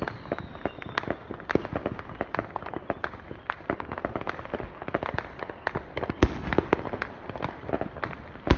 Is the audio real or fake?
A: real